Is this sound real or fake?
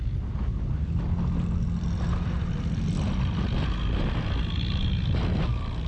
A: real